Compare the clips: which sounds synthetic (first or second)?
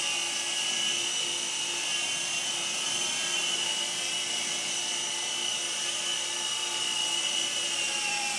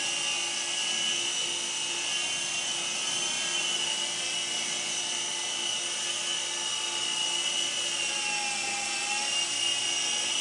first